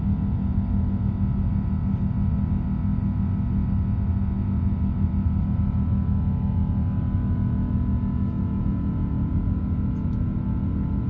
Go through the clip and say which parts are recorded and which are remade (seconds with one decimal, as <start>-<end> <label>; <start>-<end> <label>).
0.0-11.1 recorded